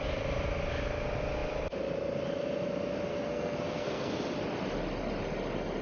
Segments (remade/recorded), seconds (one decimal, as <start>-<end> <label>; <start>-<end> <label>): 0.0-3.1 recorded; 3.1-4.1 remade; 4.1-5.8 recorded

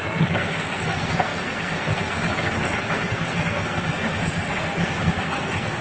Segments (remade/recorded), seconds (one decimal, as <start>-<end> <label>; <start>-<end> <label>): 0.0-5.8 remade

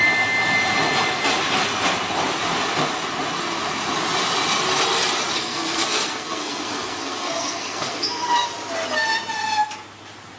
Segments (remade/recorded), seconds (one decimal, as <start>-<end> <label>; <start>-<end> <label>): 0.0-5.4 recorded; 5.4-8.5 remade; 8.5-10.4 recorded

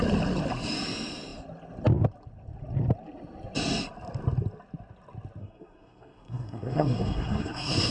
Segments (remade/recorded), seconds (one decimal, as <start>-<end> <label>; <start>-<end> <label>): 0.0-5.4 recorded; 5.4-7.9 remade

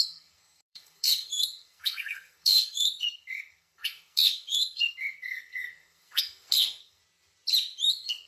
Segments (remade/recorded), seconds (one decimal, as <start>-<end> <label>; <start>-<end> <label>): 0.0-7.0 remade; 7.0-7.9 recorded; 7.9-8.3 remade

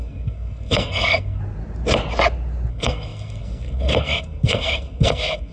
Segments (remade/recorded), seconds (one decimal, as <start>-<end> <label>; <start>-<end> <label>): 0.0-1.4 remade; 1.4-2.7 recorded; 2.7-5.5 remade

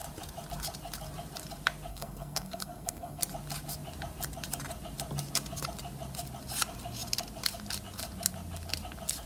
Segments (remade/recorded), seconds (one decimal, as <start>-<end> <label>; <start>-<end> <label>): 0.0-1.9 recorded; 1.9-3.2 remade; 3.2-9.3 recorded